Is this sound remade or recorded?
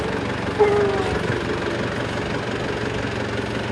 recorded